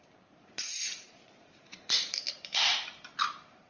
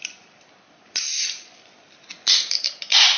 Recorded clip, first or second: second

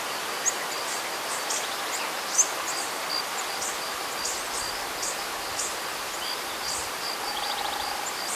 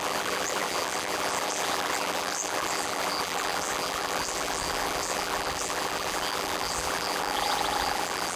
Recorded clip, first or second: first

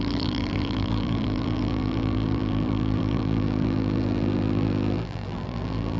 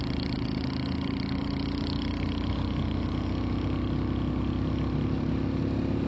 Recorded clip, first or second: second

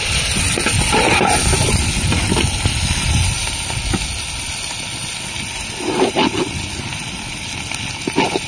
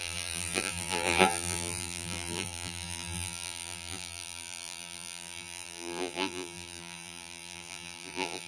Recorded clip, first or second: first